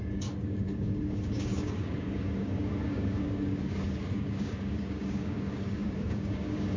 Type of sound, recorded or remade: remade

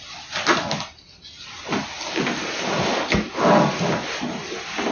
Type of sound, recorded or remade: recorded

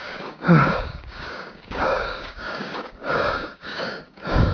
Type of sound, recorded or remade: remade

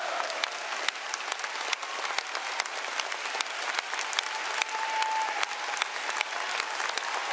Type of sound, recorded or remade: recorded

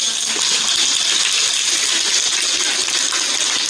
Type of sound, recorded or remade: recorded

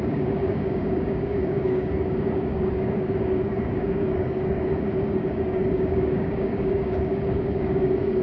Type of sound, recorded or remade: remade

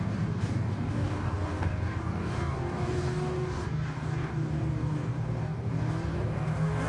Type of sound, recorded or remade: remade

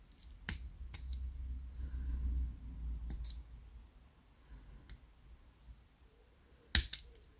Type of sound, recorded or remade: recorded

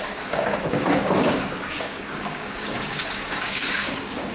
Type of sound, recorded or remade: remade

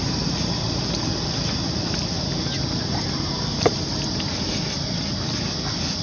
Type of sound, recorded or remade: recorded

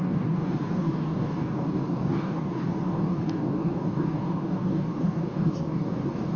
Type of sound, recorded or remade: remade